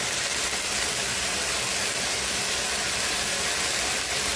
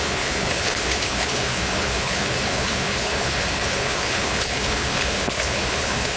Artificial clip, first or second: second